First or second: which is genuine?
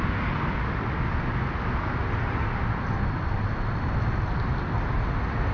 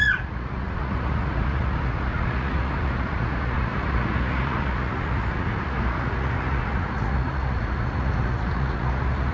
first